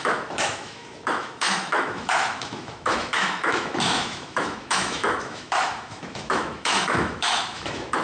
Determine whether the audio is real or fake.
fake